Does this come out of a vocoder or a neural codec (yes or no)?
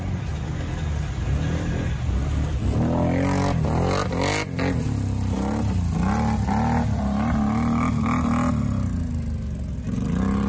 no